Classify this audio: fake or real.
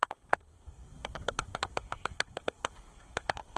fake